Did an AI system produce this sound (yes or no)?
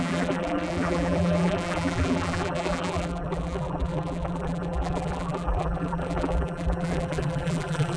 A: yes